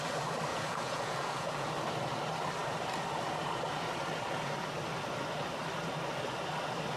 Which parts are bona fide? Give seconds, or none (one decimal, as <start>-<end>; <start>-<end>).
0.0-0.5; 1.7-7.0